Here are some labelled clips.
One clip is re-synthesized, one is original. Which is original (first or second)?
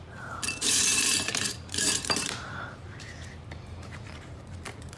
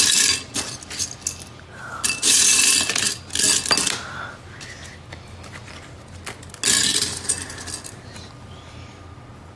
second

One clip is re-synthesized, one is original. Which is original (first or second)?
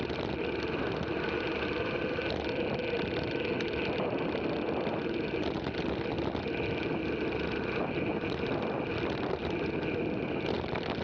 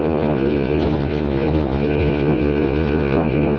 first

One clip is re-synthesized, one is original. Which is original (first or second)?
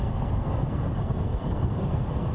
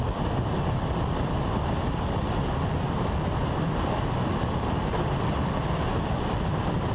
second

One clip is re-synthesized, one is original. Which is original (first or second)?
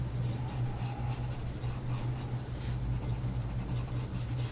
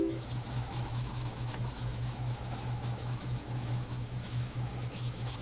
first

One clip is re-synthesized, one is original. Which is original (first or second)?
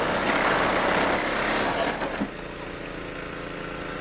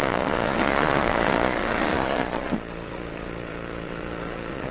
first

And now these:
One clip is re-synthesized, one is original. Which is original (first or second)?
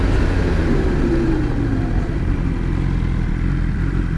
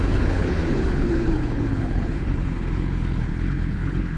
first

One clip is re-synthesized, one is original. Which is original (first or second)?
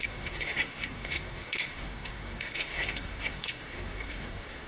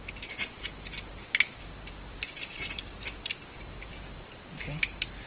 second